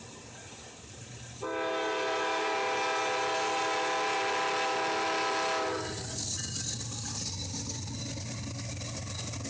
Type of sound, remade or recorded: recorded